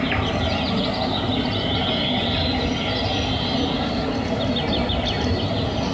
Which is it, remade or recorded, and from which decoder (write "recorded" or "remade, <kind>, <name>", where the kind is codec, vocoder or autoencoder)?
recorded